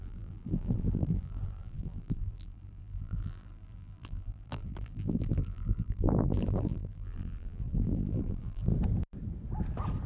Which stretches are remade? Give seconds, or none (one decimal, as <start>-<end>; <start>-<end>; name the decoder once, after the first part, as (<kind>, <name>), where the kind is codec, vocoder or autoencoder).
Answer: 0.0-8.7 (vocoder, BigVGAN v2)